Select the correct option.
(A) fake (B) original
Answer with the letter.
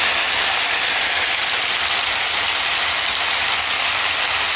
B